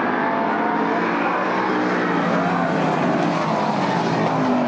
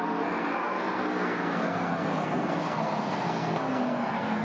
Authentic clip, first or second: first